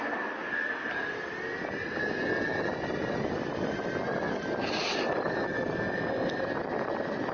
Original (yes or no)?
yes